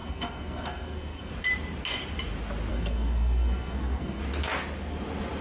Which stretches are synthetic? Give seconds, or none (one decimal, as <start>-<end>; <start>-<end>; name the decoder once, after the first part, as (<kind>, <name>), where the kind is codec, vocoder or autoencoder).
0.0-1.3 (codec, SNAC); 2.7-4.2